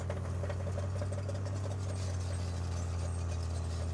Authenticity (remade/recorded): recorded